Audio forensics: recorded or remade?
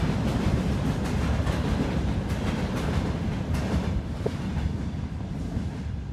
recorded